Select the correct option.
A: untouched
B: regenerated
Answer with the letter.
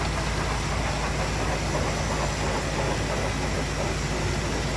A